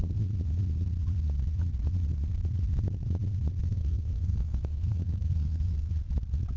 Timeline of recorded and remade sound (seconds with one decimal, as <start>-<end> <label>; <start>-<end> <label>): 0.0-3.6 recorded; 3.6-5.9 remade; 5.9-6.6 recorded

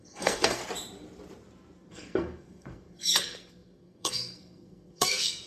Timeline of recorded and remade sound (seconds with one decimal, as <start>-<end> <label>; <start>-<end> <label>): 0.0-0.6 remade; 0.6-1.9 recorded; 1.9-5.5 remade

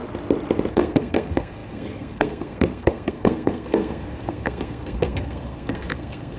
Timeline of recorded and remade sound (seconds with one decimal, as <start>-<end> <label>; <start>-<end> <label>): 0.0-0.7 recorded; 0.7-6.4 remade

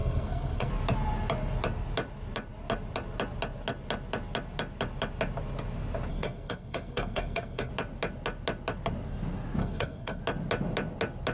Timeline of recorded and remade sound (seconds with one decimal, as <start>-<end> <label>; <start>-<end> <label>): 0.0-0.7 remade; 0.7-6.1 recorded; 6.1-7.7 remade; 7.7-9.6 recorded; 9.6-10.2 remade; 10.2-11.3 recorded

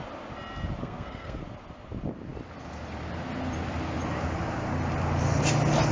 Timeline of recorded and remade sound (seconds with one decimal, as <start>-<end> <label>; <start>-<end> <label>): 0.0-0.8 recorded; 0.8-1.4 remade; 1.4-5.9 recorded

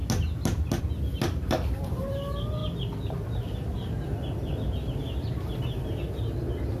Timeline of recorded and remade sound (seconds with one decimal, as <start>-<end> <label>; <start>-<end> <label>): 0.0-6.8 recorded

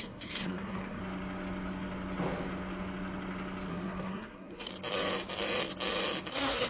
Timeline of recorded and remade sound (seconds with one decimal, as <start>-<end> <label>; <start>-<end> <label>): 0.0-1.0 remade; 1.0-3.7 recorded; 3.7-4.7 remade; 4.7-6.3 recorded; 6.3-6.7 remade